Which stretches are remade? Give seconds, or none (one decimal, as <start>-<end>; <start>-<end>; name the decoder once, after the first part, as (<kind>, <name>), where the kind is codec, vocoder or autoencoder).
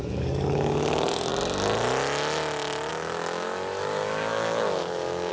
0.0-1.3 (codec, DAC); 2.9-5.3